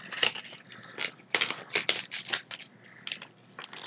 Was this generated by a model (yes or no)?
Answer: no